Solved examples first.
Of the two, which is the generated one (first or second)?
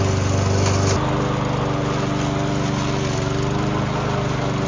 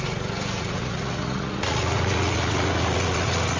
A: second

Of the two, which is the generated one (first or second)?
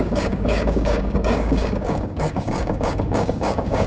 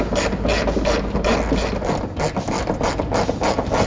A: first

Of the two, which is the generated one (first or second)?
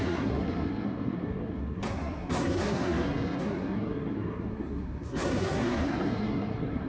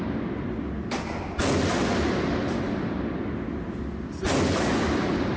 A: first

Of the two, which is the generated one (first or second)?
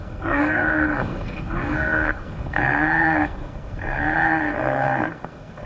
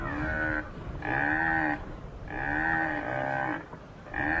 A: first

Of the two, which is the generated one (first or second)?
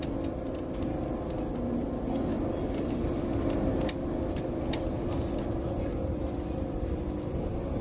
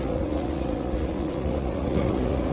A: second